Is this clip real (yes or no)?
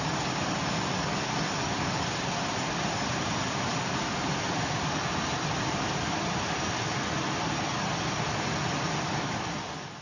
yes